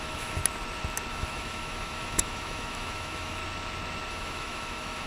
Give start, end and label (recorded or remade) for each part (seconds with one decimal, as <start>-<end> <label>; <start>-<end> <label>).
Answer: 0.0-0.4 remade; 0.4-1.1 recorded; 1.1-3.4 remade; 3.4-4.1 recorded; 4.1-5.1 remade